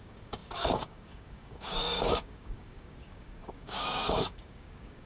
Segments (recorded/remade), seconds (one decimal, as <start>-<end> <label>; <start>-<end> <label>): 0.0-5.1 remade